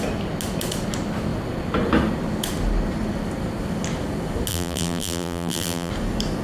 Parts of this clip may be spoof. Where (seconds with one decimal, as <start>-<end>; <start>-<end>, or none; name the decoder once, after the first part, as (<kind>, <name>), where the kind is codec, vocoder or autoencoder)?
4.5-5.9 (vocoder, BigVGAN v2)